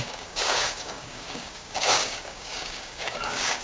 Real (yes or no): no